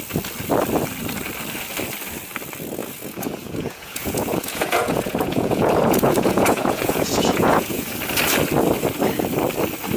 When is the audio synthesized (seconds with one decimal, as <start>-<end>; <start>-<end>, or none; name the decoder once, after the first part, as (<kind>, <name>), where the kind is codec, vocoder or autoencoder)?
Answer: 2.8-7.9 (vocoder, Vocos)